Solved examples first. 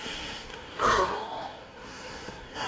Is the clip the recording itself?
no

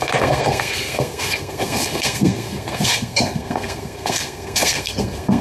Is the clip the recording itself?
no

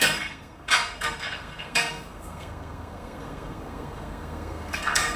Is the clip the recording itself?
no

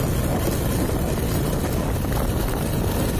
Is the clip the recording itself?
yes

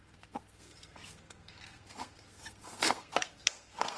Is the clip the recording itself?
no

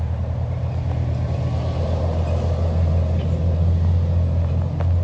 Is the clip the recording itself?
yes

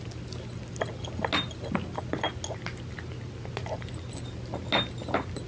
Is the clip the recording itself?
yes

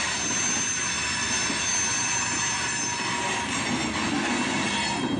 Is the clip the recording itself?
yes